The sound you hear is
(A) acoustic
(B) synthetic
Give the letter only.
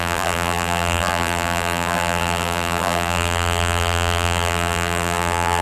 B